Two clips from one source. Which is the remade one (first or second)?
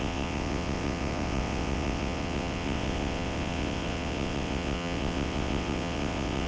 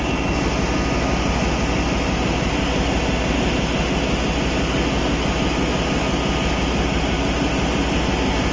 first